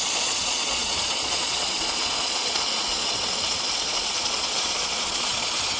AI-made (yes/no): yes